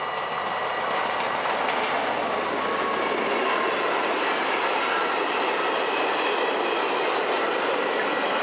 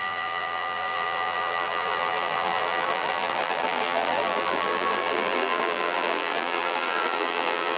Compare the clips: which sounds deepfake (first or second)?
second